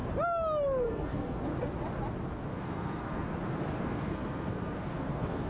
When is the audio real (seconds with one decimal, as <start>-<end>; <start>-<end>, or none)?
0.0-0.8; 1.5-2.5; 3.3-3.8